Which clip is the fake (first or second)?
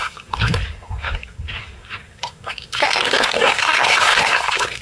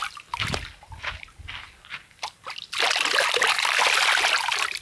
first